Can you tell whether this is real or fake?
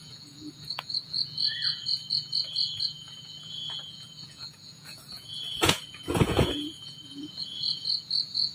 fake